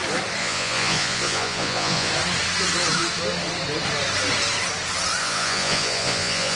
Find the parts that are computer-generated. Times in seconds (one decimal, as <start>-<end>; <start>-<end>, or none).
0.4-2.1; 5.2-6.6